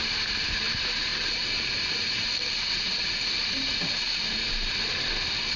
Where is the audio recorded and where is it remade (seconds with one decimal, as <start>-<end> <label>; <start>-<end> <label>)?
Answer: 0.0-5.6 recorded